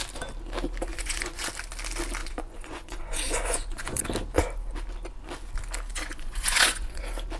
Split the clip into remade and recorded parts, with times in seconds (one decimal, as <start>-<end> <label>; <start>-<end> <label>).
0.0-0.9 recorded; 0.9-1.5 remade; 1.5-2.2 recorded; 2.2-4.0 remade; 4.0-5.9 recorded; 5.9-7.0 remade; 7.0-7.4 recorded